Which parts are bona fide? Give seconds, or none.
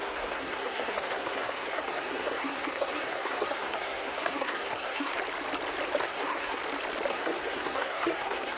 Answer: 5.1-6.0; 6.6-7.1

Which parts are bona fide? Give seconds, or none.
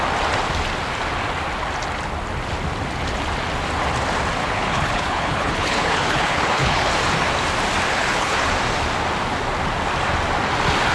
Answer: 0.0-4.4; 6.9-7.9; 8.4-10.9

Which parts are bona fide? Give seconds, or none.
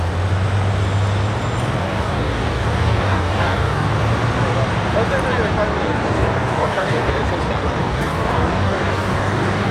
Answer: 0.0-1.8; 3.9-5.7; 7.1-7.8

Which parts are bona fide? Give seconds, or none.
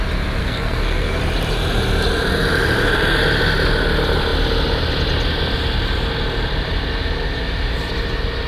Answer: 0.0-0.4; 1.2-8.5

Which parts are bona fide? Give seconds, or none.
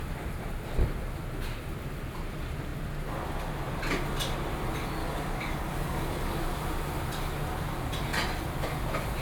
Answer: 0.0-5.0; 6.4-9.2